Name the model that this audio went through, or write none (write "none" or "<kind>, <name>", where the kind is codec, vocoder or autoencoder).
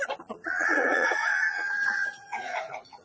vocoder, Vocos